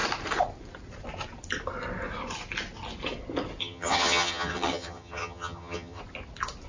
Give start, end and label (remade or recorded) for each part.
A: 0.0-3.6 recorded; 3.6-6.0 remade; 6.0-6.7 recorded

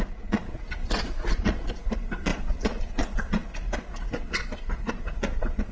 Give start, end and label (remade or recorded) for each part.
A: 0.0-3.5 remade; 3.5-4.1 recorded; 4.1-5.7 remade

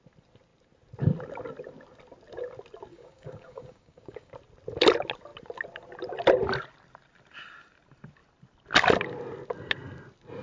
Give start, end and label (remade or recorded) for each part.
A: 0.0-2.9 recorded; 2.9-4.3 remade; 4.3-10.4 recorded

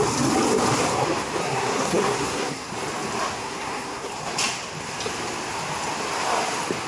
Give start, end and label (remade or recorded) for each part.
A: 0.0-1.4 recorded; 1.4-2.7 remade; 2.7-3.4 recorded; 3.4-4.1 remade; 4.1-6.9 recorded

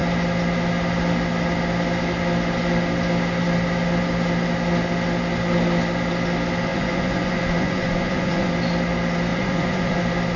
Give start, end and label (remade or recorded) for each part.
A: 0.0-6.7 recorded; 6.7-8.5 remade; 8.5-9.3 recorded; 9.3-10.0 remade; 10.0-10.4 recorded

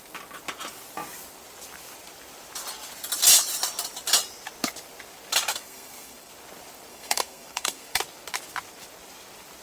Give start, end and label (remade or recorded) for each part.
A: 0.0-5.5 recorded; 5.5-6.3 remade; 6.3-6.9 recorded; 6.9-8.0 remade; 8.0-9.6 recorded

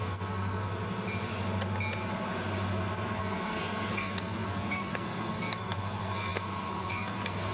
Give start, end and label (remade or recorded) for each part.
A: 0.0-0.6 remade; 0.6-3.2 recorded; 3.2-7.5 remade

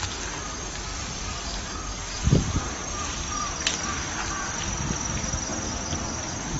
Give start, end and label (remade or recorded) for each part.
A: 0.0-0.9 recorded; 0.9-4.6 remade; 4.6-6.6 recorded